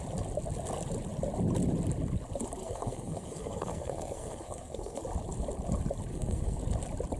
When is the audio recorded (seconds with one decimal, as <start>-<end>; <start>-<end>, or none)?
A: 0.0-2.6; 5.0-6.1; 6.6-7.2